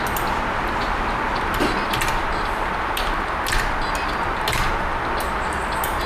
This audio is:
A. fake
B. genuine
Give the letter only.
B